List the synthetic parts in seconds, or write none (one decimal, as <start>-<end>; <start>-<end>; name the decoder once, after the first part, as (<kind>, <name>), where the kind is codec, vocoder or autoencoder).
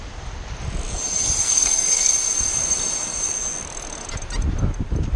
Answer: 1.4-2.1 (codec, SNAC)